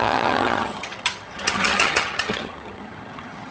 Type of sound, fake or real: fake